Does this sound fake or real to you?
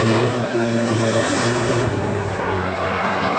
fake